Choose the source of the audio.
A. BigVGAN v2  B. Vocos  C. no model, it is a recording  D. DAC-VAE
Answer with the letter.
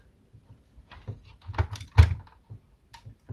C